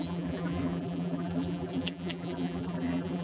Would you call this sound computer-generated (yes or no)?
yes